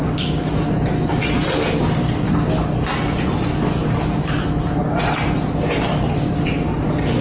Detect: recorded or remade recorded